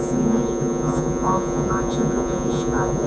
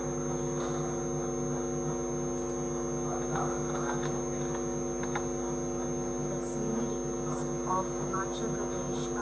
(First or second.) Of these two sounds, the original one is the second